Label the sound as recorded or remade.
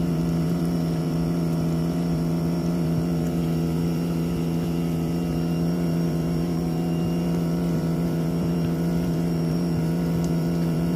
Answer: remade